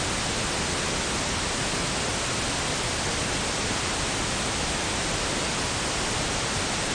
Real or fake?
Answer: real